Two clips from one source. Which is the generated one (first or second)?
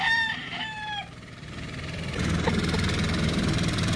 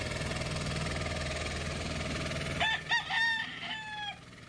first